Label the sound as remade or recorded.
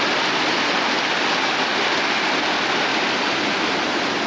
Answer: recorded